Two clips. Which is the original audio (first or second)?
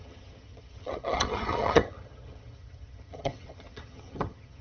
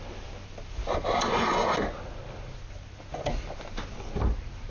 second